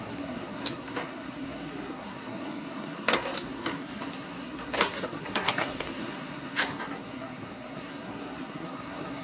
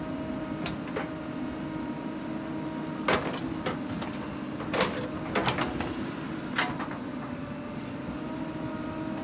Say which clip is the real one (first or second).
second